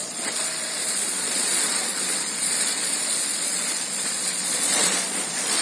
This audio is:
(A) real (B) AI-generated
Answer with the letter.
B